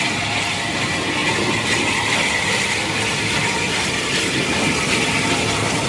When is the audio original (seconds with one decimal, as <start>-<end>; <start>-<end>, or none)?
0.0-5.9